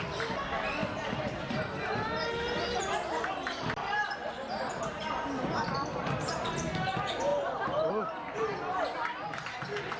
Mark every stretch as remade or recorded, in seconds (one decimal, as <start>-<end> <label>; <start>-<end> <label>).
0.0-10.0 recorded